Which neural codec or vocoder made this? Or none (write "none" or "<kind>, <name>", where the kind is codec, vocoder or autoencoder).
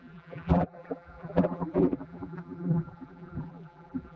vocoder, BigVGAN v2